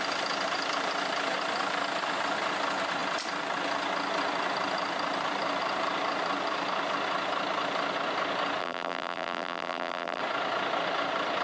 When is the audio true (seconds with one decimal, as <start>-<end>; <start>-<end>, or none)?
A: 0.0-8.6; 10.2-11.4

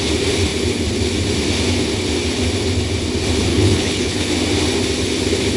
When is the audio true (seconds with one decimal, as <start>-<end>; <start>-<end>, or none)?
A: 0.0-3.5; 4.3-5.6

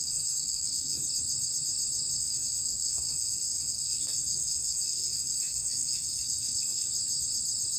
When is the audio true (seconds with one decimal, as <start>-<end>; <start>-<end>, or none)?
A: 1.0-2.2; 6.9-7.8

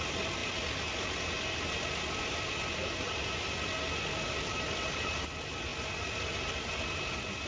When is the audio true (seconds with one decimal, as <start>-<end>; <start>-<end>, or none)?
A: 0.0-2.8; 3.4-7.5

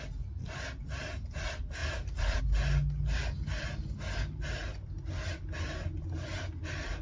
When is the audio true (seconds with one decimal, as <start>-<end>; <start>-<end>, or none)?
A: 0.0-1.8; 2.4-7.0

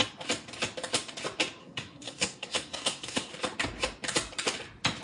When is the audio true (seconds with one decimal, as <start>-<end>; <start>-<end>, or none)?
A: 0.0-1.6; 3.3-5.0

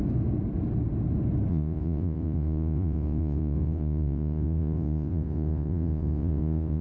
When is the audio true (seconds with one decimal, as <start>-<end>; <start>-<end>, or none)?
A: 0.0-1.5